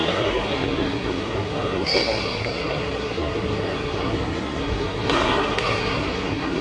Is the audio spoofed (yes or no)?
yes